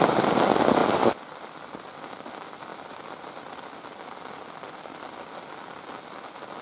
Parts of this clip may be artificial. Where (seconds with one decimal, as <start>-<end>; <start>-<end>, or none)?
0.8-2.3; 2.7-3.3